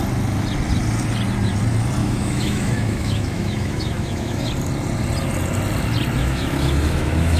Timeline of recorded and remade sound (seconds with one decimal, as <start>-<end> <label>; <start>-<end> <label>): 0.0-2.0 recorded; 2.0-4.5 remade; 4.5-6.2 recorded; 6.2-7.4 remade